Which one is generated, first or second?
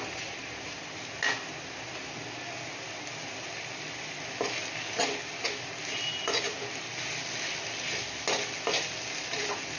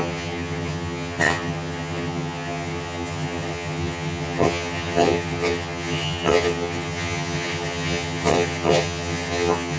second